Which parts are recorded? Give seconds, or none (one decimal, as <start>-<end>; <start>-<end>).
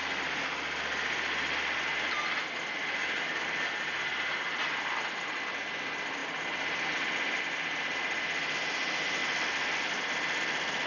0.0-3.0; 5.4-10.9